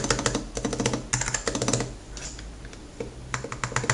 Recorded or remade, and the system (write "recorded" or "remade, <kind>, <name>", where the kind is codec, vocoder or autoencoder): recorded